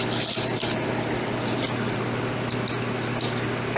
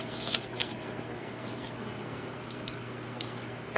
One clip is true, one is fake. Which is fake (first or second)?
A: second